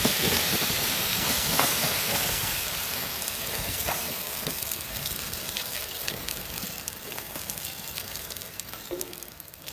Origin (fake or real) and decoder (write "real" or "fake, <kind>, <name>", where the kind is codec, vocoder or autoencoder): fake, codec, SNAC